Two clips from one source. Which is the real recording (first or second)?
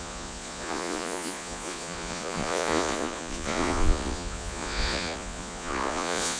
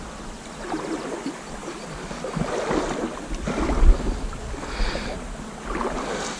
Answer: second